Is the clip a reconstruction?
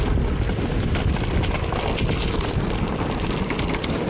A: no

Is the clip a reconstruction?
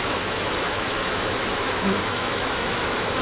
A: yes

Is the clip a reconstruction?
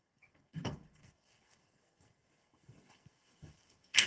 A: yes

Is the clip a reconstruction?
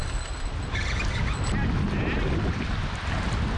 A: no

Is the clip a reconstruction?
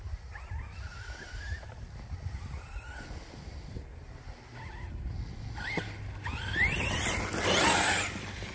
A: no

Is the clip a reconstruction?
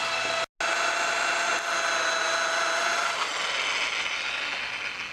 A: no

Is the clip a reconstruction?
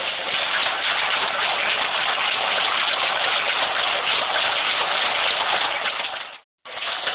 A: yes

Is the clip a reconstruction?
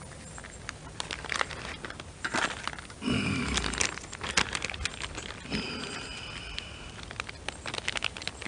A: no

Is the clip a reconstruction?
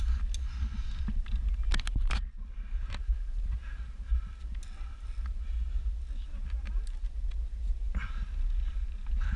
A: no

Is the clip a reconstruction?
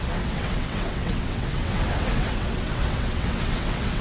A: yes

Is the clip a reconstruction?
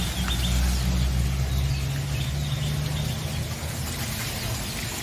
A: no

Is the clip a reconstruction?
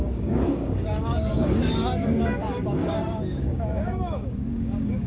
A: yes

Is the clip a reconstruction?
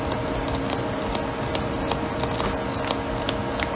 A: no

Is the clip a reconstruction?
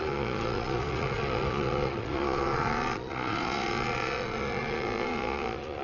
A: yes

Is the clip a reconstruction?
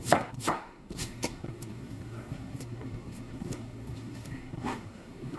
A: yes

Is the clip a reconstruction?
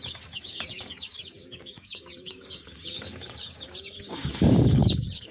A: yes